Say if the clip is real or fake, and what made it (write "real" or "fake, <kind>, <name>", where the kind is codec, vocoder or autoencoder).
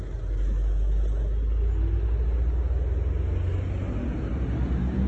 real